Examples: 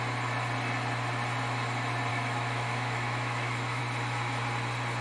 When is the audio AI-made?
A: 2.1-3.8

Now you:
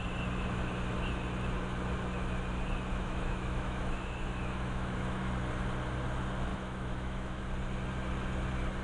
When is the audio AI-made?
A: 2.9-5.2; 6.5-7.4

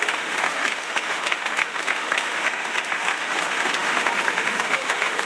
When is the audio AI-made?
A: 0.0-5.3

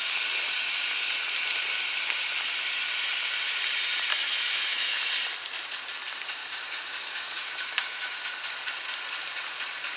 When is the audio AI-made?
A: 4.1-5.0; 6.4-8.3